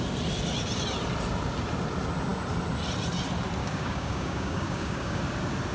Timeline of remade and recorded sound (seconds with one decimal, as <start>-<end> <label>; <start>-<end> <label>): 0.0-3.6 recorded; 3.6-5.2 remade; 5.2-5.7 recorded